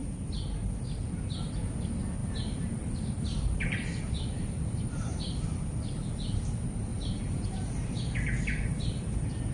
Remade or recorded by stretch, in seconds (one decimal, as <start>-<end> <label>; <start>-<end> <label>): 0.0-2.2 recorded; 2.2-5.6 remade; 5.6-6.9 recorded; 6.9-8.4 remade; 8.4-9.5 recorded